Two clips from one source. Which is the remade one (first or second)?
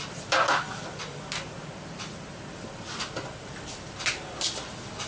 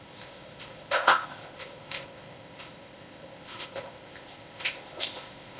second